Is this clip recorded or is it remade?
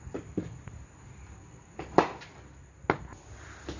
recorded